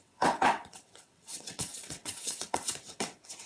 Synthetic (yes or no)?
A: yes